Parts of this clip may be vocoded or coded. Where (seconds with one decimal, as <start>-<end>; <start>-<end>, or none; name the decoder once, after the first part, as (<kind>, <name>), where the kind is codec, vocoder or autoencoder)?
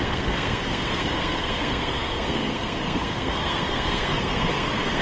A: 0.0-5.0 (codec, SNAC)